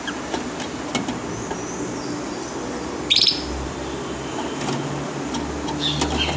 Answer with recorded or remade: recorded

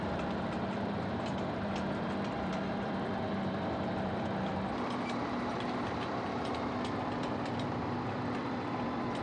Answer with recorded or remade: remade